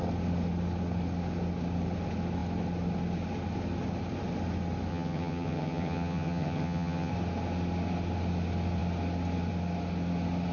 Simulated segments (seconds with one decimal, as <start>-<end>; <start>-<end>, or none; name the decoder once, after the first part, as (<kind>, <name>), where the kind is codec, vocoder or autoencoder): 4.9-7.1 (vocoder, HiFi-GAN)